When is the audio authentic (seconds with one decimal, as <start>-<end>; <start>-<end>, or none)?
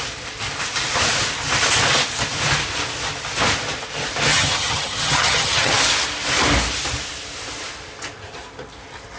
0.0-4.3; 5.7-9.2